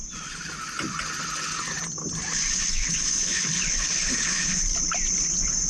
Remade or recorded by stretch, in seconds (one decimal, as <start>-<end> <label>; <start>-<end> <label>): 0.0-2.5 recorded; 2.5-4.7 remade; 4.7-5.7 recorded